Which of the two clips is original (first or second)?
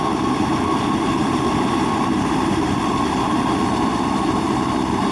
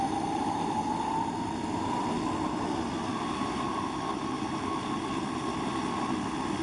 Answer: second